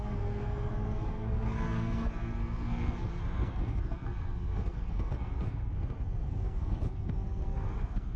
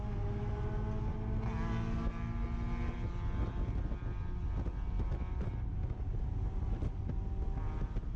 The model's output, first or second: first